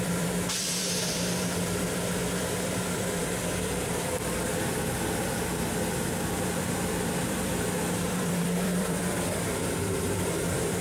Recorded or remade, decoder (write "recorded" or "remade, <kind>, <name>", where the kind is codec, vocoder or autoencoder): remade, vocoder, BigVGAN v2